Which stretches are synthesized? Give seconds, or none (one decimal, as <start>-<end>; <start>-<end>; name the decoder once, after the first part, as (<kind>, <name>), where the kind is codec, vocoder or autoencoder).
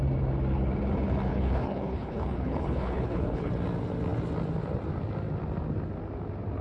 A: 1.3-3.5 (codec, HILCodec)